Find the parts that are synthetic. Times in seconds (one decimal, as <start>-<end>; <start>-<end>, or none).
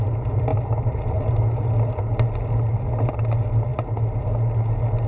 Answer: 0.5-1.4